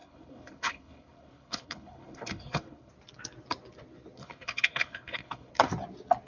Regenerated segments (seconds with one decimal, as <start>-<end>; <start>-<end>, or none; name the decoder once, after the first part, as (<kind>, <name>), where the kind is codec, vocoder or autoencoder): 0.0-2.9 (codec, HILCodec); 4.2-5.5